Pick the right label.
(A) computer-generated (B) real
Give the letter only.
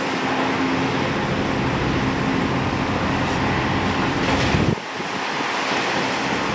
B